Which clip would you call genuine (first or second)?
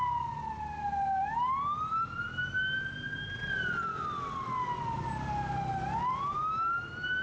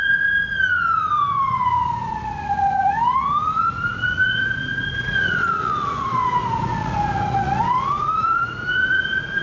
first